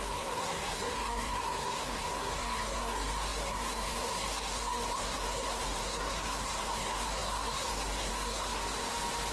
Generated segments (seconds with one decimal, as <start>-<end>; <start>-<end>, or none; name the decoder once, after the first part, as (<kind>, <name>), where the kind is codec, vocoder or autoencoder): 0.0-8.6 (codec, SNAC)